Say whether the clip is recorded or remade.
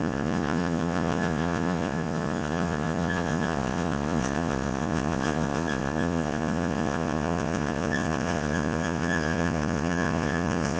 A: remade